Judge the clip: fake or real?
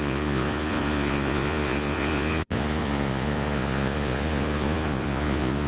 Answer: fake